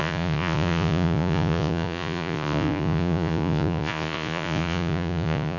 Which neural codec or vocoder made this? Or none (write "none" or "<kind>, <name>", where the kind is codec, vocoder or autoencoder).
vocoder, Vocos